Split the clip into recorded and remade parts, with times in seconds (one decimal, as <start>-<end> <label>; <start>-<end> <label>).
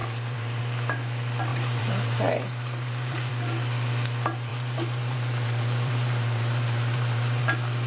0.0-0.6 remade; 0.6-1.5 recorded; 1.5-3.3 remade; 3.3-4.5 recorded; 4.5-7.4 remade; 7.4-7.9 recorded